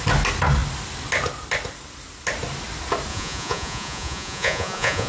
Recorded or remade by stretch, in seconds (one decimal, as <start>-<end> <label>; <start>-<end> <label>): 0.0-3.1 recorded; 3.1-5.1 remade